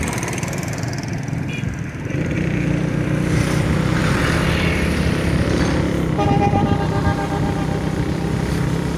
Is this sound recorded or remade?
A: remade